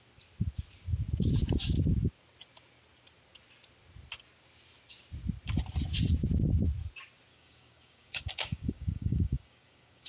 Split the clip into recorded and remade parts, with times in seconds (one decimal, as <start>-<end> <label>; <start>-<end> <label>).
0.0-7.3 recorded; 7.3-10.1 remade